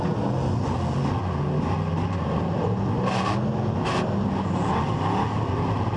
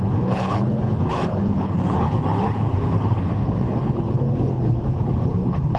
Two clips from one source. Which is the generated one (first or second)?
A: second